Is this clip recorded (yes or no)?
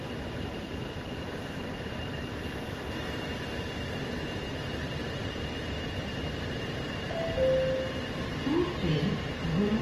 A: yes